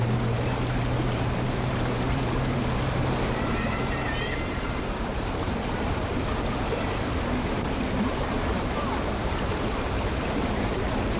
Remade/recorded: remade